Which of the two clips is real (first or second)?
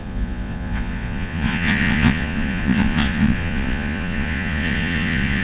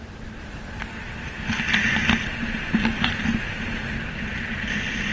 second